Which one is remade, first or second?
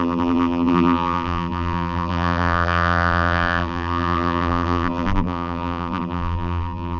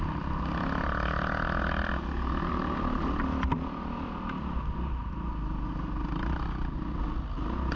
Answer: first